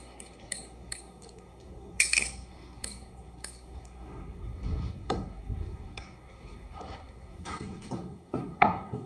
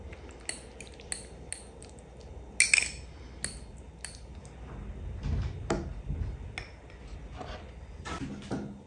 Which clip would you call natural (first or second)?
second